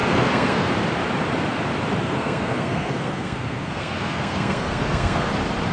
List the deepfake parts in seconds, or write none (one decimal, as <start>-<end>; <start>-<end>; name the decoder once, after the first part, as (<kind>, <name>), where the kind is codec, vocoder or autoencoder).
0.0-0.7 (codec, SNAC); 2.0-5.3